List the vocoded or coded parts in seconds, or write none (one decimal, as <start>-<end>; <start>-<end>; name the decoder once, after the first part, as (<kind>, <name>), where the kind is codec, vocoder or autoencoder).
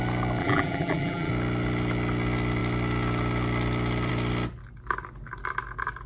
0.4-1.3 (vocoder, BigVGAN v2)